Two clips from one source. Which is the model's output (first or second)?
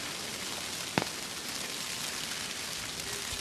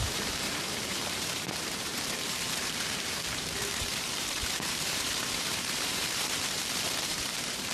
second